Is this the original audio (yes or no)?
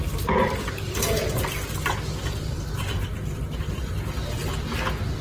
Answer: yes